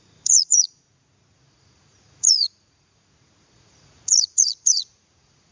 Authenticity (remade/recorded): remade